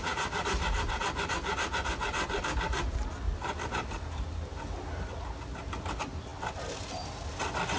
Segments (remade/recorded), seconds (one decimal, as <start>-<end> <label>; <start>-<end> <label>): 0.0-7.8 recorded